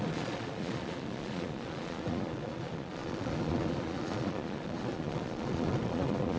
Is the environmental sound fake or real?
fake